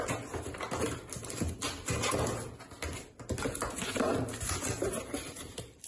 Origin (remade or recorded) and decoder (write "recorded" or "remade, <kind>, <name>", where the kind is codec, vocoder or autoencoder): recorded